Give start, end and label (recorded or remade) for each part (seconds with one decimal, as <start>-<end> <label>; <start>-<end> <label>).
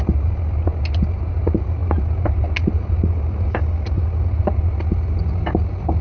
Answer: 0.0-6.0 recorded